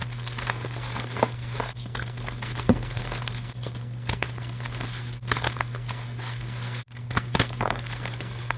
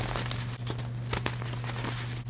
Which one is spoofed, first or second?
first